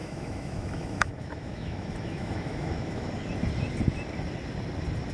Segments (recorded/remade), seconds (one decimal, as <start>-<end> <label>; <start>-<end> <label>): 0.0-3.1 remade; 3.1-5.1 recorded

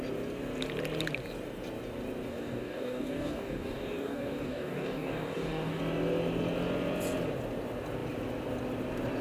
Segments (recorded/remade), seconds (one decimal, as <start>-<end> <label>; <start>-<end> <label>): 0.0-2.3 recorded; 2.3-5.8 remade; 5.8-9.2 recorded

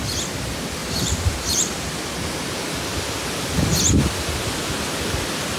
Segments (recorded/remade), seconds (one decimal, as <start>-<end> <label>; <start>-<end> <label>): 0.0-0.8 recorded; 0.8-1.9 remade; 1.9-5.6 recorded